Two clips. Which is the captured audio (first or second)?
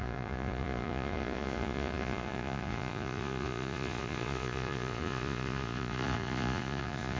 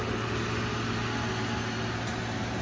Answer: second